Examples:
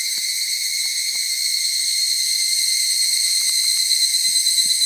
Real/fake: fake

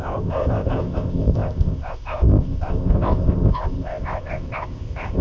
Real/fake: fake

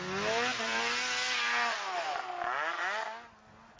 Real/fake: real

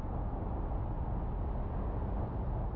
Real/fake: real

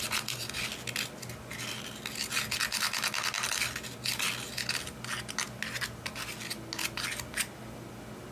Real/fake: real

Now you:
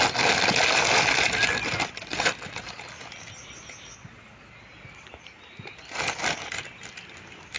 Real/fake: real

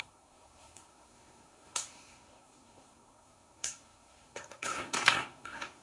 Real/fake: fake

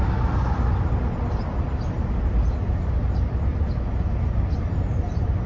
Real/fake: real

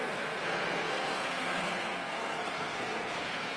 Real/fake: fake